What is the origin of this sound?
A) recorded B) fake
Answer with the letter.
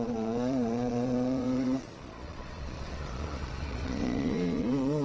B